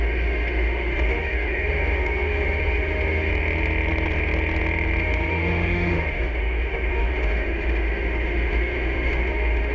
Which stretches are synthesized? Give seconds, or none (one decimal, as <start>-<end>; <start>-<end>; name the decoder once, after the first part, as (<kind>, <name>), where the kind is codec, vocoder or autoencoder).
0.0-3.3 (autoencoder, DAC-VAE); 5.0-9.7